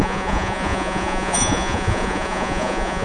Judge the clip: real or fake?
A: fake